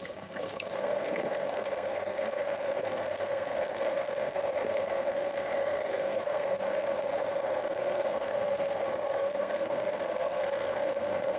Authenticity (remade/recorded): remade